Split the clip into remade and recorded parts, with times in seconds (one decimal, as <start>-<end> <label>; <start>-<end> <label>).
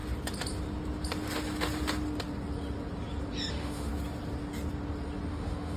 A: 0.0-3.5 recorded; 3.5-3.9 remade; 3.9-5.3 recorded; 5.3-5.8 remade